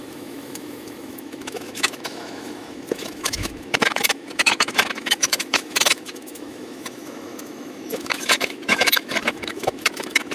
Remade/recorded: remade